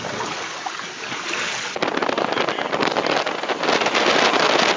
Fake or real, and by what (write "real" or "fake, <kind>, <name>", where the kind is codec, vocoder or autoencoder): real